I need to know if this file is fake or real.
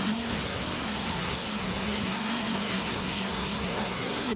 fake